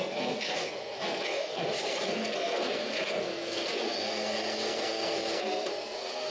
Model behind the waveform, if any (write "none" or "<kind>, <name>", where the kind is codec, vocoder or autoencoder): codec, SNAC